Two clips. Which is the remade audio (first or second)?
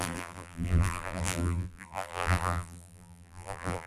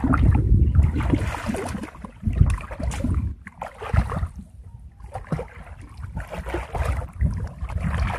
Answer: first